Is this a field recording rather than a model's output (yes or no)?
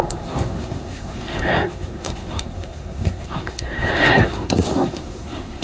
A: no